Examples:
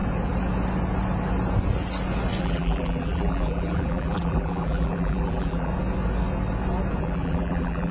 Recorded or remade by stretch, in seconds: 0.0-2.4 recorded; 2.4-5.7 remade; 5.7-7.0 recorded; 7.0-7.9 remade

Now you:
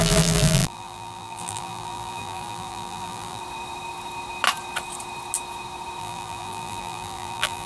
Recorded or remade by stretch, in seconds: 0.0-3.4 remade; 3.4-6.0 recorded; 6.0-7.7 remade

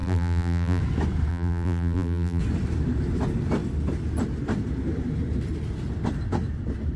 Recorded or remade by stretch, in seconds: 0.0-0.8 remade; 0.8-1.3 recorded; 1.3-2.4 remade; 2.4-7.0 recorded